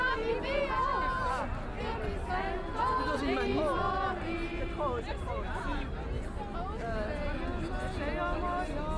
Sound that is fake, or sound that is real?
real